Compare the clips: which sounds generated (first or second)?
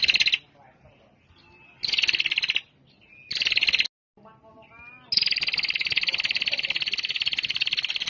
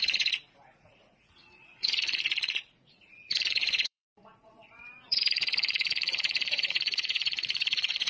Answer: second